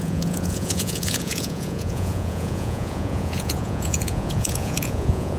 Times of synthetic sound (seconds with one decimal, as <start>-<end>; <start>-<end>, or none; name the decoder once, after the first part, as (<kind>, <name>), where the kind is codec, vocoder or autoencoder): 0.0-5.4 (vocoder, Vocos)